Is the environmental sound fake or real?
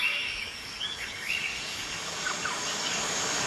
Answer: fake